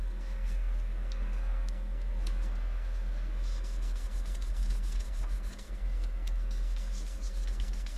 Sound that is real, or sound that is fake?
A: fake